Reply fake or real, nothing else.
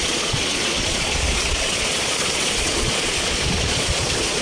fake